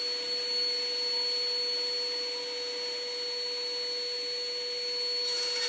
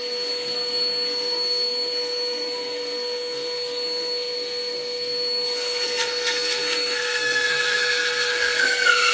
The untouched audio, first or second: first